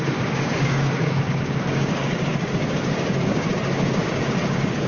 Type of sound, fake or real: fake